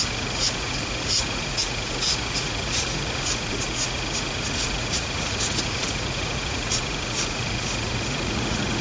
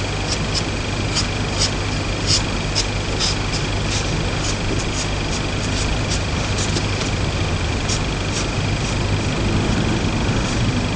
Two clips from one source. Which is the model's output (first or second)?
first